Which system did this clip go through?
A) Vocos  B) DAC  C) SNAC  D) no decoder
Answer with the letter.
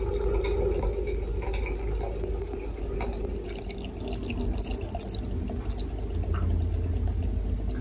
D